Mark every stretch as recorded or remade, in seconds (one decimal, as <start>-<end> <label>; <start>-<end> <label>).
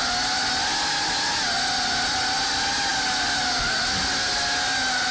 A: 0.0-5.1 recorded